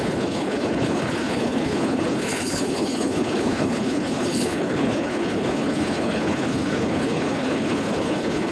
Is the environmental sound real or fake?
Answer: fake